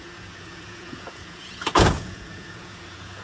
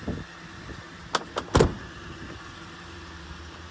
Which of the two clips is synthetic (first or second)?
first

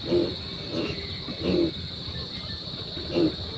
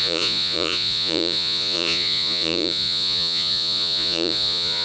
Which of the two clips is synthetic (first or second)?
second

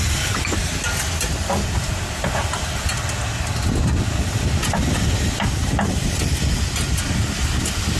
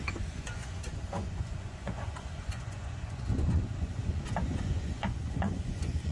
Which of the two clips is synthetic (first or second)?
second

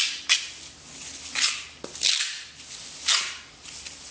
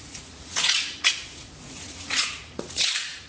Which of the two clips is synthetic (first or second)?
second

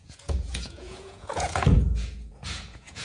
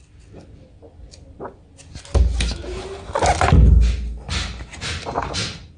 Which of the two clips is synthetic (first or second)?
first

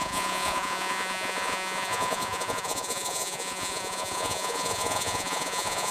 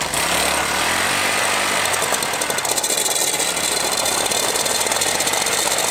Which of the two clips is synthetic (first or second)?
first